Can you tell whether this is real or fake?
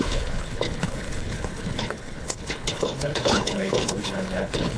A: fake